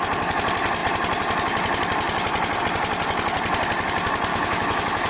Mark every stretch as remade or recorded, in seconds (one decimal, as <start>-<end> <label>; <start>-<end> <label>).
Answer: 0.0-4.3 recorded; 4.3-5.1 remade